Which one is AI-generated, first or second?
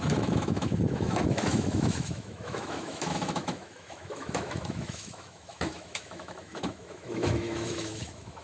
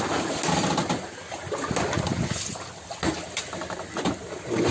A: first